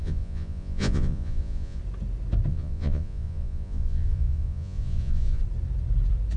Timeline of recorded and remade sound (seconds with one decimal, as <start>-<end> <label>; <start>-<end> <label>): 0.0-1.8 remade; 1.8-2.5 recorded; 2.5-5.4 remade; 5.4-6.4 recorded